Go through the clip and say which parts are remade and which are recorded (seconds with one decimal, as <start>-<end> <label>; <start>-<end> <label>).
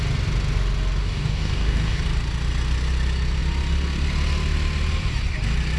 0.0-1.0 recorded; 1.0-2.0 remade; 2.0-5.8 recorded